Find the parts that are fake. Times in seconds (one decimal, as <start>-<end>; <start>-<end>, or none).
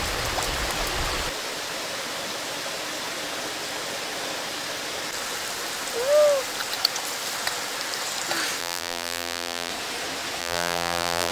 8.6-9.7; 10.4-11.3